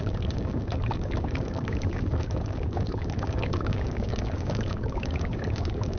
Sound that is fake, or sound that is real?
fake